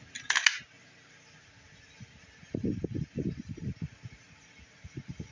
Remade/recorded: recorded